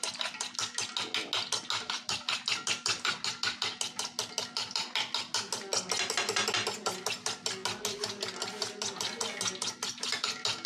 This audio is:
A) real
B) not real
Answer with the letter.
A